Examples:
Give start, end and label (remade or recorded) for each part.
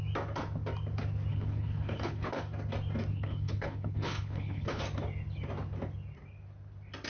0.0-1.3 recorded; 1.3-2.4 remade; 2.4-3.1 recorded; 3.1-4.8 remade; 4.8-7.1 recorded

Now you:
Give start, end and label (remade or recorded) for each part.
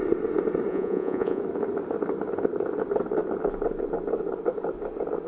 0.0-0.7 recorded; 0.7-1.4 remade; 1.4-5.3 recorded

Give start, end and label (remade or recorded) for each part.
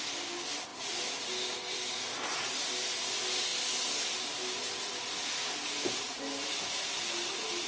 0.0-7.7 recorded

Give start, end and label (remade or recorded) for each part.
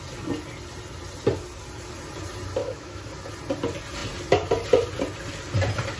0.0-2.6 recorded; 2.6-3.1 remade; 3.1-6.0 recorded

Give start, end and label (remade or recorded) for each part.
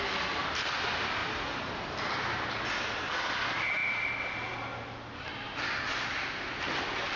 0.0-7.2 recorded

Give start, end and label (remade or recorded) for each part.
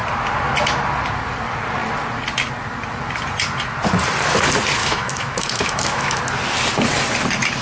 0.0-4.8 recorded; 4.8-6.2 remade; 6.2-7.6 recorded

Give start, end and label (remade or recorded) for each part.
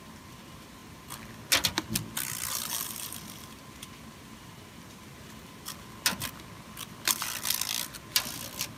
0.0-8.8 recorded